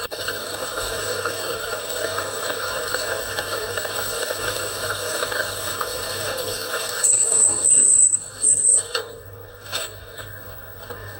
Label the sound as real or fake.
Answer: fake